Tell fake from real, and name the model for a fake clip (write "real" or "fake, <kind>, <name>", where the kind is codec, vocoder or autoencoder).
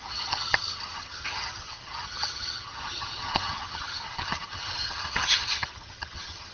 fake, vocoder, HiFi-GAN